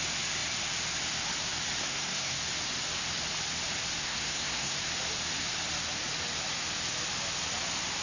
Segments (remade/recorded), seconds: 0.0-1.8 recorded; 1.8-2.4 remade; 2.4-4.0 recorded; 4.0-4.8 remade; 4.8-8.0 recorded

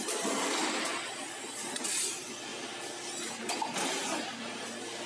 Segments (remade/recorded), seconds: 0.0-5.1 recorded

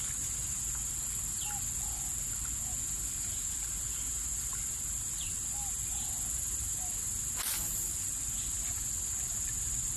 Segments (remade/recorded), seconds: 0.0-10.0 recorded

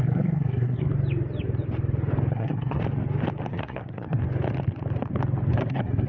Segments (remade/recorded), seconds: 0.0-0.9 remade; 0.9-2.3 recorded; 2.3-2.8 remade; 2.8-3.5 recorded; 3.5-4.2 remade; 4.2-5.5 recorded; 5.5-6.1 remade

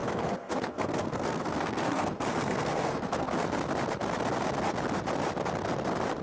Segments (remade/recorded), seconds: 0.0-3.3 remade; 3.3-6.2 recorded

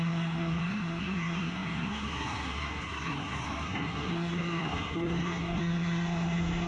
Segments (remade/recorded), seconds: 0.0-6.7 remade